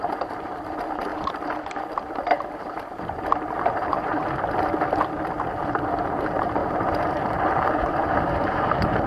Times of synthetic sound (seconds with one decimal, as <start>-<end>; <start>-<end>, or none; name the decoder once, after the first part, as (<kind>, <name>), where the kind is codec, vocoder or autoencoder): 0.0-1.1 (vocoder, BigVGAN v2); 1.7-4.2; 5.6-9.1

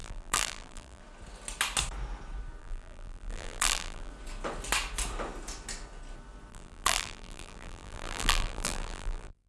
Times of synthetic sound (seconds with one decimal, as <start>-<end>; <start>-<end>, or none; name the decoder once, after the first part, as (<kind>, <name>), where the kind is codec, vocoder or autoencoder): 0.0-1.0 (vocoder, BigVGAN v2); 2.6-4.1; 6.5-9.5

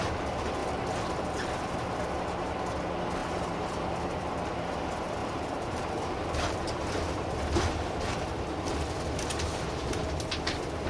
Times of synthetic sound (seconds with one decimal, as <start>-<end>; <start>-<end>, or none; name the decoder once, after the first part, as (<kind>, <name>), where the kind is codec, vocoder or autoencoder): 3.2-4.3 (vocoder, BigVGAN v2); 5.2-7.5

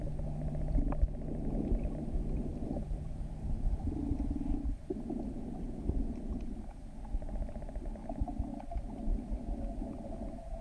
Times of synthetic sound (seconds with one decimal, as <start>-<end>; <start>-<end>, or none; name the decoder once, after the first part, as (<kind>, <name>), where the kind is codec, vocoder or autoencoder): 2.5-6.7 (vocoder, BigVGAN v2)

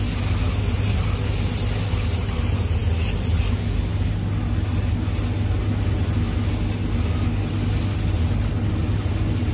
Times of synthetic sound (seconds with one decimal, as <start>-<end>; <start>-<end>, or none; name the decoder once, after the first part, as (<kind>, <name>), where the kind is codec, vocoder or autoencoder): none